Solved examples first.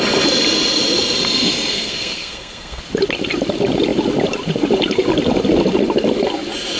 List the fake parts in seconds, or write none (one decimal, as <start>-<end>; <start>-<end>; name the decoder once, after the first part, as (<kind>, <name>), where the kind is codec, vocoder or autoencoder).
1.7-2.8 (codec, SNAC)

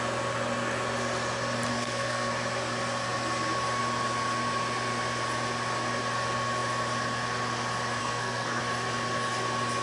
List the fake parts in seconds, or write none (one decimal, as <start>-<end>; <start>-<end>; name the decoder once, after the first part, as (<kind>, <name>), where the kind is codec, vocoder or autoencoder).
1.7-2.3 (codec, SNAC); 8.0-8.6

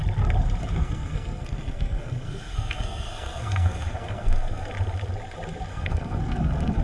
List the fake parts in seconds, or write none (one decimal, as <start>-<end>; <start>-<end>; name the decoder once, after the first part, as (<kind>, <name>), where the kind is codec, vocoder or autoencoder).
0.6-4.7 (codec, SNAC); 5.7-6.8

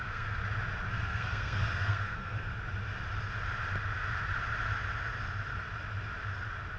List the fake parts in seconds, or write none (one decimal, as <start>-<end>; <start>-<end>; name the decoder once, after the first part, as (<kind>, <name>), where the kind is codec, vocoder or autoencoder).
0.0-0.4 (codec, SNAC); 0.9-2.5

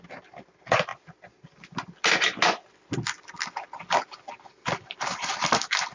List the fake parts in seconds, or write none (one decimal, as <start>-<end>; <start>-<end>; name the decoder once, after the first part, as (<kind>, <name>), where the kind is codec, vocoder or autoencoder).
none

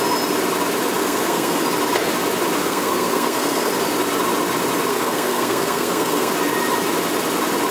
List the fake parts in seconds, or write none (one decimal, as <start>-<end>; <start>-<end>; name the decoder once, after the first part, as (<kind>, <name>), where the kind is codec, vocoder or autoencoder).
1.0-1.6 (codec, SNAC); 2.6-3.7; 4.9-6.3

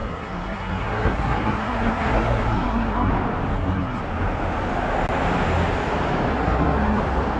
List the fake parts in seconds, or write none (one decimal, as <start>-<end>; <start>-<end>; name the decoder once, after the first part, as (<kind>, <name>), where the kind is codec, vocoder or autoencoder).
0.0-3.1 (codec, SNAC); 3.5-4.0; 6.3-7.0